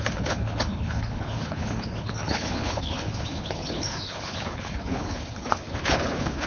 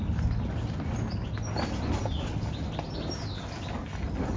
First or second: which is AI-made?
first